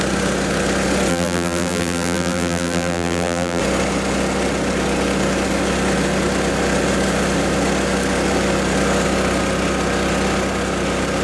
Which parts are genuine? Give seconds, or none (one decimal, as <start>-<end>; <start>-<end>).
0.0-1.1; 3.6-11.2